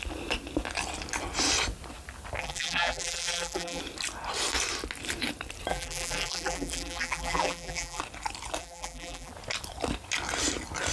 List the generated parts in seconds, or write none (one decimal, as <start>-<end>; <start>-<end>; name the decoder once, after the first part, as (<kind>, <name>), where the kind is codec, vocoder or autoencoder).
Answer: 2.4-3.8 (vocoder, BigVGAN v2); 5.7-8.0; 8.6-9.3